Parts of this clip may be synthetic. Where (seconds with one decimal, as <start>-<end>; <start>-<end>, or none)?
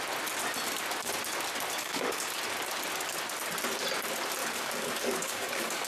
1.8-2.4; 4.4-5.9